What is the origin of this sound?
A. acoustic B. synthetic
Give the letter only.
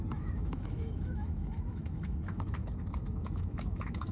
B